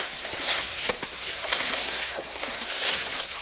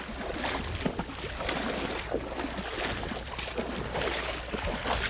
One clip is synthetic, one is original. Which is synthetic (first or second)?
first